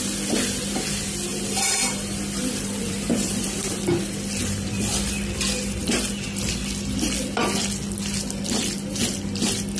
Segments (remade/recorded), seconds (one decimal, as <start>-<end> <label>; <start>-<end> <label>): 0.0-1.3 recorded; 1.3-5.1 remade; 5.1-9.8 recorded